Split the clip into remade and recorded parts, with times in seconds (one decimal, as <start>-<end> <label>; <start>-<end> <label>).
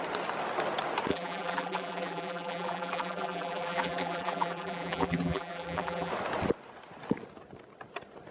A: 0.0-1.1 recorded; 1.1-6.1 remade; 6.1-8.3 recorded